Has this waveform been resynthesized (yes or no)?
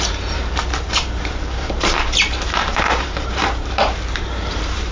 yes